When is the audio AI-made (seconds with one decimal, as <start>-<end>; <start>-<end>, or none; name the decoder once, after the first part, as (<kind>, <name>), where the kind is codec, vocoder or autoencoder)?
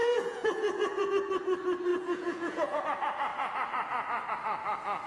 0.0-1.1 (vocoder, Vocos); 1.9-2.8